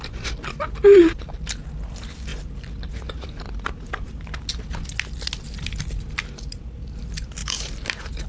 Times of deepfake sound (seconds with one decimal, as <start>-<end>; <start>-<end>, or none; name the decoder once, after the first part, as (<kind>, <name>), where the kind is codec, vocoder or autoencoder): 2.3-4.5 (vocoder, BigVGAN v2); 7.4-8.3